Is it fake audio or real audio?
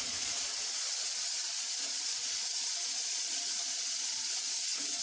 fake